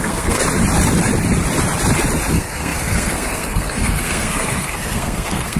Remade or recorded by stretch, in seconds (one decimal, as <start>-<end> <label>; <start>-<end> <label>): 0.0-0.4 remade; 0.4-2.3 recorded; 2.3-5.6 remade

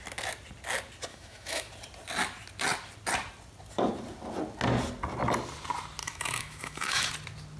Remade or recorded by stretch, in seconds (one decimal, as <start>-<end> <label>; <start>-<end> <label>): 0.0-1.1 recorded; 1.1-1.7 remade; 1.7-6.0 recorded; 6.0-7.1 remade; 7.1-7.6 recorded

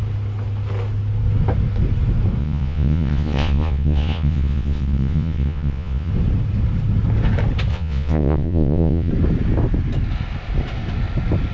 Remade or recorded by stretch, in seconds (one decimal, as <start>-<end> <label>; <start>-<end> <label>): 0.0-2.4 recorded; 2.4-6.1 remade; 6.1-7.7 recorded; 7.7-9.1 remade; 9.1-11.5 recorded

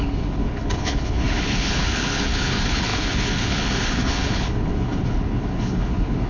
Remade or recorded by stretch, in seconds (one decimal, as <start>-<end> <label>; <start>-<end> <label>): 0.0-6.3 remade